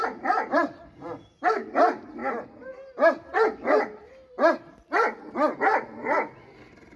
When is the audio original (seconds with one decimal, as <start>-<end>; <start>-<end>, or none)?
0.0-7.0